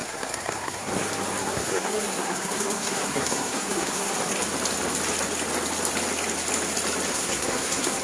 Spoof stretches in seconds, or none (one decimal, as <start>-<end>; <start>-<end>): 0.0-0.9; 1.4-4.1; 7.1-8.0